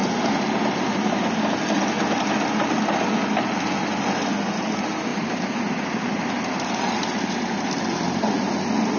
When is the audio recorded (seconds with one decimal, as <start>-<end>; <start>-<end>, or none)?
0.0-9.0